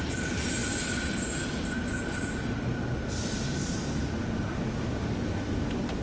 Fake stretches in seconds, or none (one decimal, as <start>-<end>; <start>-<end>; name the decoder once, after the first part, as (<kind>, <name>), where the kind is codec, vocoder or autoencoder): none